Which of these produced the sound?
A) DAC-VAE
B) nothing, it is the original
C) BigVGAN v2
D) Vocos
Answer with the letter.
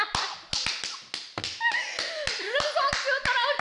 B